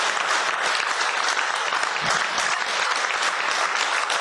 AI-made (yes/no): no